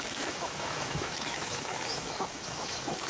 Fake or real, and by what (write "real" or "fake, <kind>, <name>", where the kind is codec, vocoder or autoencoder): fake, autoencoder, DAC-VAE